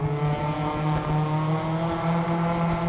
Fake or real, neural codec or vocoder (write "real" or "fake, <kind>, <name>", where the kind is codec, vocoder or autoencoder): real